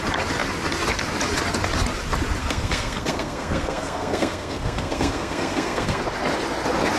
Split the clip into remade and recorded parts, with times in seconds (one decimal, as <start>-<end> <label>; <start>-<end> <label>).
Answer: 0.0-2.4 recorded; 2.4-6.0 remade; 6.0-7.0 recorded